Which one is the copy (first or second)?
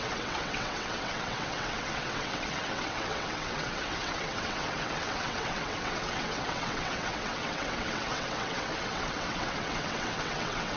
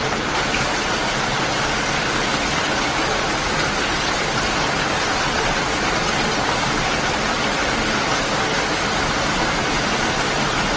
first